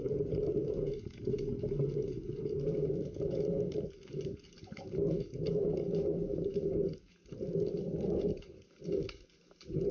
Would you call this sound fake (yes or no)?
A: yes